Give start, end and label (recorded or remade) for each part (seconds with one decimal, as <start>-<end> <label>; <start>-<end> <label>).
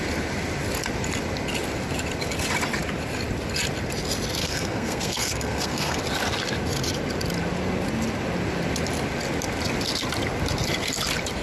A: 0.0-4.4 recorded; 4.4-6.0 remade; 6.0-11.4 recorded